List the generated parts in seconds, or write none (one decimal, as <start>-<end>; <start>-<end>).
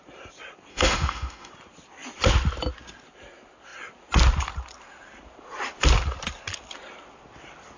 0.7-1.5